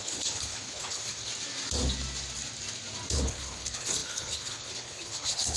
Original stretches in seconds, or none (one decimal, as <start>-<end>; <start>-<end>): 1.3-3.1